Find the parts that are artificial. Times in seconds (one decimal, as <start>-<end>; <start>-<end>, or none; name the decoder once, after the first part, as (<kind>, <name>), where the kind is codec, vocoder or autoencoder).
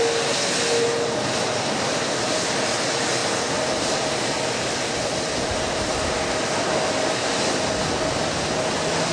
none